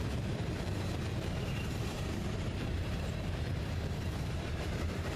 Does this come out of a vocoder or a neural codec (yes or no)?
yes